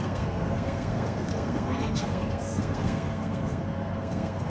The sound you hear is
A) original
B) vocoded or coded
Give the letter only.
B